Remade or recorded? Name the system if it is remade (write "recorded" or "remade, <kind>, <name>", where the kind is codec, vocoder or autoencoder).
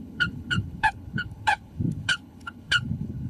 remade, codec, HILCodec